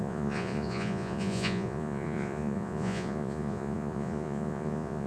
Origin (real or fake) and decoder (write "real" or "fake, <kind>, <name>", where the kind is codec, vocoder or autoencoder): fake, vocoder, Vocos